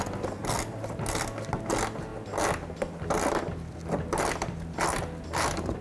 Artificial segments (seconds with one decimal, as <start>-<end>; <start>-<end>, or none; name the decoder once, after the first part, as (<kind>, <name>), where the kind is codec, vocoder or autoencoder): none